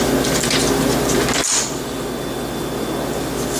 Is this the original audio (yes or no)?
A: yes